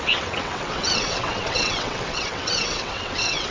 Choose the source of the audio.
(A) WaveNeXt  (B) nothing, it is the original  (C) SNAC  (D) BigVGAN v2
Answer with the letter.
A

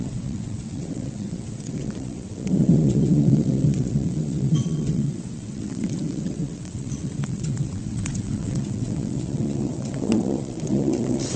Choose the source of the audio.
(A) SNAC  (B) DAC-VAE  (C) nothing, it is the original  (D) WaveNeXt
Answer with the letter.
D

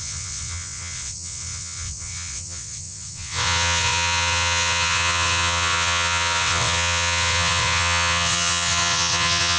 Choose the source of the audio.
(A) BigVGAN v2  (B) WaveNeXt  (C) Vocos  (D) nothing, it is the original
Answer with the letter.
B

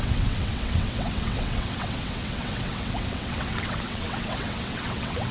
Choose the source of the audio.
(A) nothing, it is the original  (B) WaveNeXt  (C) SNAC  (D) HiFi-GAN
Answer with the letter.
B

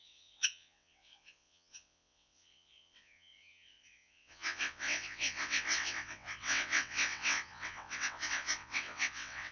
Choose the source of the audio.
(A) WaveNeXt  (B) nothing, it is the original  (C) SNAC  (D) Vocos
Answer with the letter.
A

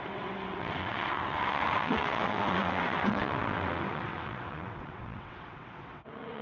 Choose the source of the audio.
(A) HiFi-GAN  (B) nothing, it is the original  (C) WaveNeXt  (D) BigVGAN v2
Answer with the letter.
C